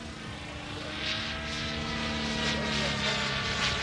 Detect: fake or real real